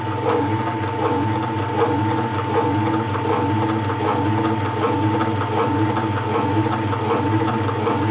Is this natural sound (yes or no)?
yes